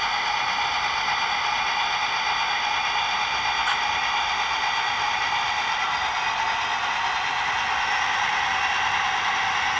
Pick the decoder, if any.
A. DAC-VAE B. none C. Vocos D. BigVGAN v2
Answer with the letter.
B